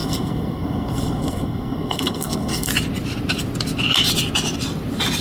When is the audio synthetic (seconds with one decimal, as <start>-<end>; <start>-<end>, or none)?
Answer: 0.0-2.7